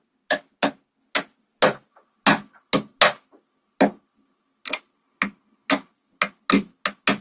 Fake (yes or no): no